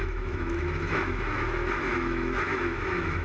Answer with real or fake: fake